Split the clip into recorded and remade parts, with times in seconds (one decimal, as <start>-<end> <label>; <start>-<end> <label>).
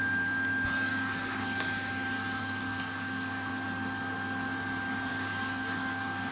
0.0-0.9 recorded; 0.9-1.9 remade; 1.9-2.4 recorded; 2.4-3.5 remade; 3.5-5.1 recorded; 5.1-6.3 remade